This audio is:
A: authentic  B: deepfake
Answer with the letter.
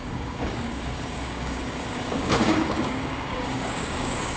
B